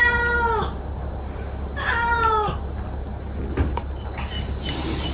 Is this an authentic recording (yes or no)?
yes